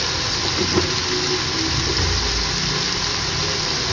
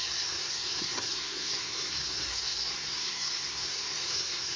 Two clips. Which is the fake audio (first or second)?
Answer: second